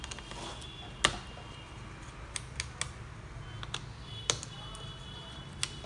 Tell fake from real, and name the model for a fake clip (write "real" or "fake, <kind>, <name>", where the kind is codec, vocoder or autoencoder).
real